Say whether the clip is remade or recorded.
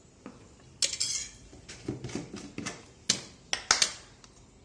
recorded